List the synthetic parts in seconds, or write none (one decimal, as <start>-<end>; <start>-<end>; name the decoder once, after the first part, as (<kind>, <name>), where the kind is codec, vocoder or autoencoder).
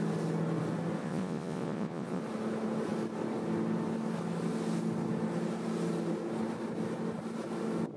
1.0-2.2 (vocoder, Vocos)